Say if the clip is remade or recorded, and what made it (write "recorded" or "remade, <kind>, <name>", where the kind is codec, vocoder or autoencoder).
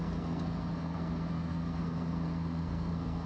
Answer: remade, codec, SNAC